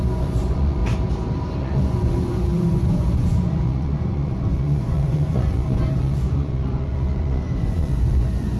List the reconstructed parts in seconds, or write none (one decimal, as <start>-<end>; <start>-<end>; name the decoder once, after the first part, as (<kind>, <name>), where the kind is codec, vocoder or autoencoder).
0.0-0.8 (vocoder, Vocos); 1.6-8.6